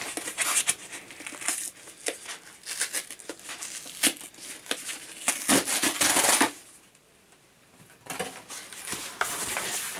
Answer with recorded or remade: recorded